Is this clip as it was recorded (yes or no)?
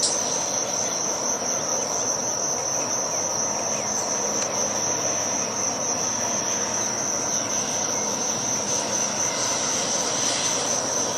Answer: yes